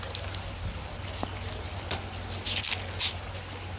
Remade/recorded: recorded